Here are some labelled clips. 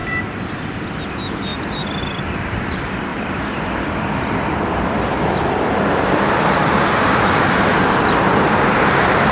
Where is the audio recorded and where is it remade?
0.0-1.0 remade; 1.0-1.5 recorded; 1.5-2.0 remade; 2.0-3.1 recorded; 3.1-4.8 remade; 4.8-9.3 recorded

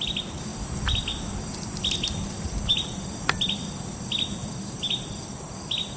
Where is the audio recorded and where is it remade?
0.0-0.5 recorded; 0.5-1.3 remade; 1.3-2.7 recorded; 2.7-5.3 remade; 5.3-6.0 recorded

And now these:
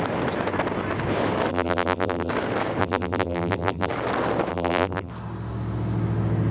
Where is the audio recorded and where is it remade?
0.0-1.5 recorded; 1.5-2.3 remade; 2.3-2.8 recorded; 2.8-3.9 remade; 3.9-4.5 recorded; 4.5-5.1 remade; 5.1-6.5 recorded

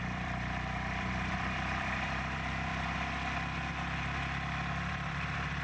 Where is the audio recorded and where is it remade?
0.0-2.7 remade; 2.7-4.9 recorded; 4.9-5.6 remade

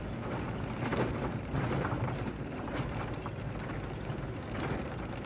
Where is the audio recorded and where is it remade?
0.0-0.9 recorded; 0.9-4.1 remade; 4.1-5.3 recorded

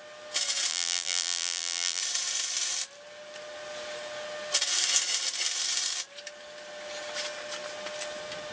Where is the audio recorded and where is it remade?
0.0-0.7 recorded; 0.7-2.0 remade; 2.0-8.5 recorded

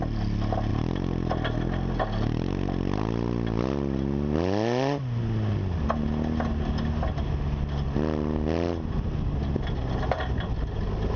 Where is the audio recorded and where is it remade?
0.0-11.2 recorded